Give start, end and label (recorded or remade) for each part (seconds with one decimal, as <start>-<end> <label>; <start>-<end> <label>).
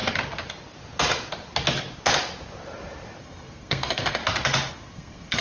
0.0-3.2 recorded; 3.2-4.2 remade; 4.2-4.7 recorded; 4.7-5.4 remade